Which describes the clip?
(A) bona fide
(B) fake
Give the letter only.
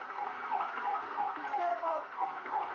B